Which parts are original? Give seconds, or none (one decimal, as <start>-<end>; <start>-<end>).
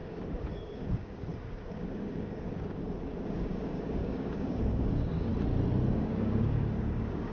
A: 5.3-5.9